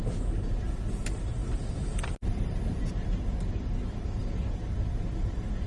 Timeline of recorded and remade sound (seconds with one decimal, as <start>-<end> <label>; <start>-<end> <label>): 0.0-1.4 recorded; 1.4-2.1 remade; 2.1-4.2 recorded; 4.2-5.0 remade; 5.0-5.7 recorded